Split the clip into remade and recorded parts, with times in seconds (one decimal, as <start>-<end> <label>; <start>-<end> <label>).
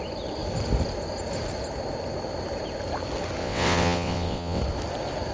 0.0-3.4 recorded; 3.4-4.6 remade; 4.6-5.3 recorded